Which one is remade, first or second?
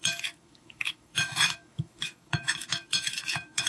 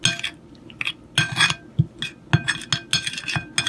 first